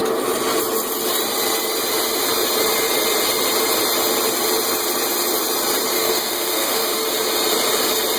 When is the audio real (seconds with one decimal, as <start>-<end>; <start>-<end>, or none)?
0.0-5.9; 7.0-8.2